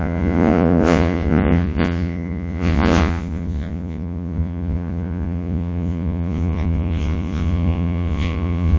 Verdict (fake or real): fake